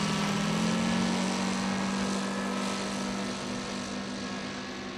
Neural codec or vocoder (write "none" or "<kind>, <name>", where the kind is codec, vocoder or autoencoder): none